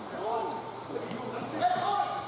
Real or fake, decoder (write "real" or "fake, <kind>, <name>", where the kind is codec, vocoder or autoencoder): fake, vocoder, BigVGAN v2